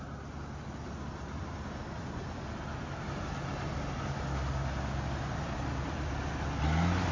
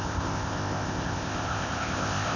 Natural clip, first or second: first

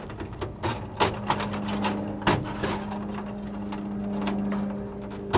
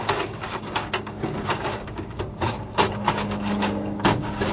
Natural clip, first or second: first